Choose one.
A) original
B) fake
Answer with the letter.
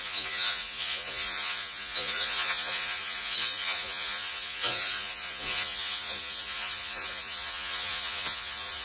B